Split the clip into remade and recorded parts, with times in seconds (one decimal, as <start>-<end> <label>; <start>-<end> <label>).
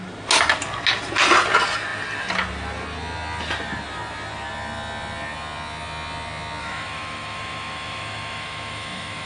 0.0-6.6 recorded; 6.6-9.3 remade